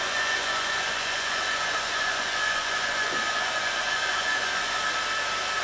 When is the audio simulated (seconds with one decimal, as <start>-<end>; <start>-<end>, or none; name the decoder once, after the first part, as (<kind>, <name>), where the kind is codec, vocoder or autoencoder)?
0.0-4.8 (vocoder, Vocos)